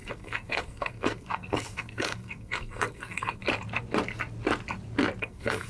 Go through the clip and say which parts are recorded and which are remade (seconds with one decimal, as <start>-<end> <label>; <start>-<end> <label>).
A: 0.0-3.4 remade; 3.4-5.2 recorded; 5.2-5.7 remade